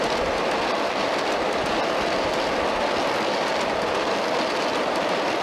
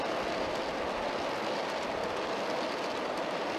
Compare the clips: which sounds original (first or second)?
second